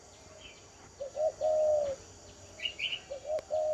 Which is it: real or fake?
real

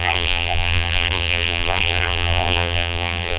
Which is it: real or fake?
fake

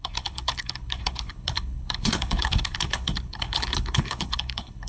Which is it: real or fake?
fake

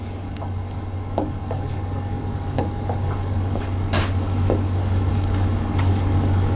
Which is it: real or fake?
fake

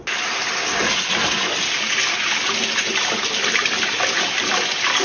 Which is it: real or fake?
real